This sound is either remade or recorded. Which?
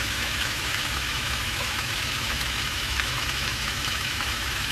remade